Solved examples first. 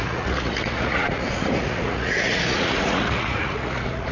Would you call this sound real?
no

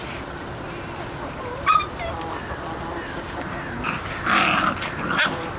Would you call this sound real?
yes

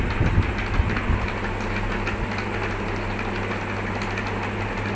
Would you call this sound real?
yes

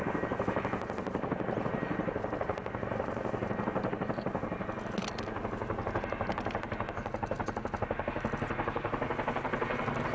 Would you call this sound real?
yes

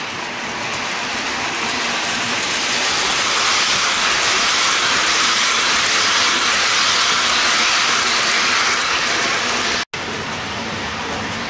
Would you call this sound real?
yes